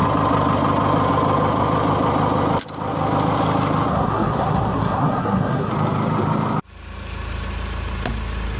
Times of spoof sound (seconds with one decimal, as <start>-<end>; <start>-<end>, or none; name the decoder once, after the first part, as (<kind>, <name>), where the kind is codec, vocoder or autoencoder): 3.9-5.7 (codec, SNAC)